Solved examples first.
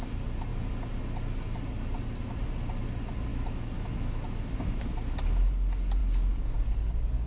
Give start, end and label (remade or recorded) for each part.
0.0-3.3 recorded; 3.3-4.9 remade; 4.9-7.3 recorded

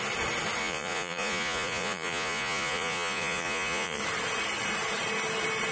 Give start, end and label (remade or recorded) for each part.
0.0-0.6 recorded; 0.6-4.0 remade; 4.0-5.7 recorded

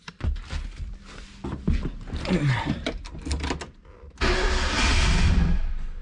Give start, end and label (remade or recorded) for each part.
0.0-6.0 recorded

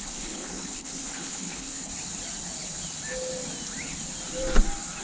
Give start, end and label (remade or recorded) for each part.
0.0-1.9 remade; 1.9-5.0 recorded

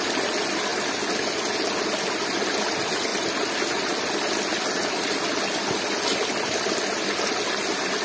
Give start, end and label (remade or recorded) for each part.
0.0-8.0 recorded

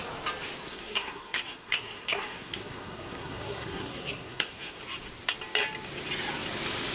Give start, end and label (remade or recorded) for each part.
0.0-0.7 recorded; 0.7-4.8 remade; 4.8-6.9 recorded

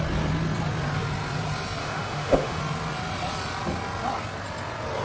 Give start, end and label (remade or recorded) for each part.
0.0-1.8 recorded; 1.8-2.6 remade; 2.6-5.0 recorded

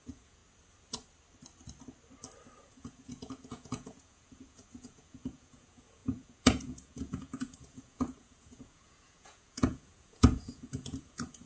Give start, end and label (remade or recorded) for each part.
0.0-0.4 remade; 0.4-2.6 recorded; 2.6-11.5 remade